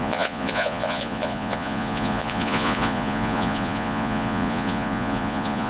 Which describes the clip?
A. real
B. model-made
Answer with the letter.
B